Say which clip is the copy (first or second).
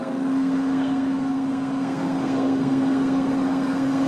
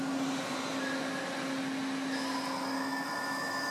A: first